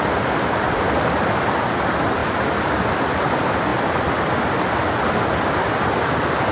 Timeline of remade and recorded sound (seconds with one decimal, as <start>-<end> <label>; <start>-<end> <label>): 0.0-6.5 recorded

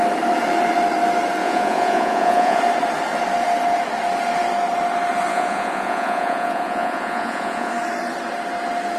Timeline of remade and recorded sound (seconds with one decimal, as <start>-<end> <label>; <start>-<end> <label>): 0.0-1.4 recorded; 1.4-2.6 remade; 2.6-5.3 recorded; 5.3-7.7 remade; 7.7-9.0 recorded